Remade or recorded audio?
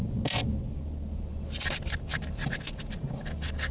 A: recorded